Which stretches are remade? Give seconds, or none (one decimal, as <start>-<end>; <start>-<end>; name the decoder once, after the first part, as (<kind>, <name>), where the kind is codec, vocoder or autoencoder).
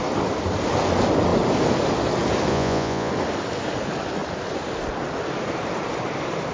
2.5-3.1 (vocoder, Vocos)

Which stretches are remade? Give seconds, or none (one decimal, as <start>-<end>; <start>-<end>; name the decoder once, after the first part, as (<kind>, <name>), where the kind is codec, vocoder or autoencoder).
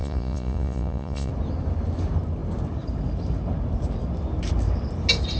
0.0-1.3 (vocoder, Vocos)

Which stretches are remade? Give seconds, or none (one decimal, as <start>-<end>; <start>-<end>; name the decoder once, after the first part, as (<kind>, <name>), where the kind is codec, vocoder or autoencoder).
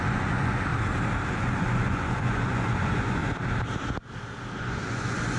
0.0-0.7 (vocoder, Vocos); 1.3-3.2; 4.6-5.4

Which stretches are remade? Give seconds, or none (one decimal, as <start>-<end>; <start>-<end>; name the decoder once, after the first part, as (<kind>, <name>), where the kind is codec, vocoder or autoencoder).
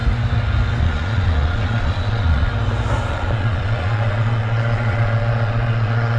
0.8-2.5 (vocoder, Vocos); 3.1-6.2